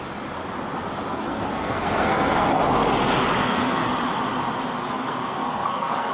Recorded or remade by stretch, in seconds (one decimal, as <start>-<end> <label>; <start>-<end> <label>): 0.0-1.1 recorded; 1.1-2.6 remade; 2.6-3.4 recorded; 3.4-3.9 remade; 3.9-4.8 recorded; 4.8-6.1 remade

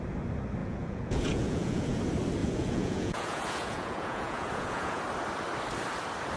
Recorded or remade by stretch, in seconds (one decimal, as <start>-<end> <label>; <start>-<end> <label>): 0.0-0.6 recorded; 0.6-2.0 remade; 2.0-2.4 recorded; 2.4-5.0 remade; 5.0-6.4 recorded

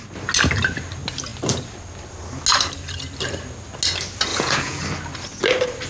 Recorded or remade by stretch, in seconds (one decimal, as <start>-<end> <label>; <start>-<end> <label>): 0.0-4.3 recorded; 4.3-4.8 remade; 4.8-5.9 recorded

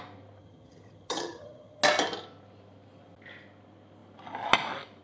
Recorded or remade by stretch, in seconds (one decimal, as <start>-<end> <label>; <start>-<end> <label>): 0.0-0.4 recorded; 0.4-1.8 remade; 1.8-5.0 recorded

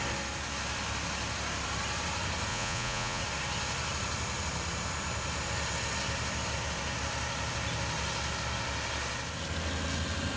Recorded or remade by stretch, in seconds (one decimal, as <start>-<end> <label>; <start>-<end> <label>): 0.0-2.5 recorded; 2.5-3.2 remade; 3.2-10.4 recorded

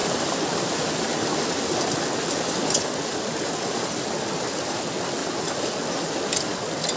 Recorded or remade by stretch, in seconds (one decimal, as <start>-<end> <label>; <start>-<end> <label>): 0.0-7.0 recorded

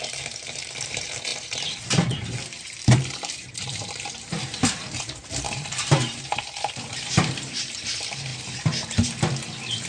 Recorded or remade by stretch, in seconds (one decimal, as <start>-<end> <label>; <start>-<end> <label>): 0.0-8.3 remade; 8.3-9.9 recorded